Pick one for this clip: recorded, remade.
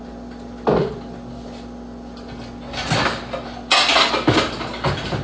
recorded